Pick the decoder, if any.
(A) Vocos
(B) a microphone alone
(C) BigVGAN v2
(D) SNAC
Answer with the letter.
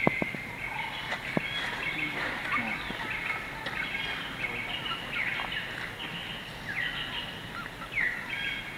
B